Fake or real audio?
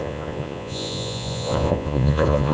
fake